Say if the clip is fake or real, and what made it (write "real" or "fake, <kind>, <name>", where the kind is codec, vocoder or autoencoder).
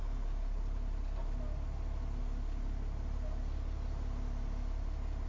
real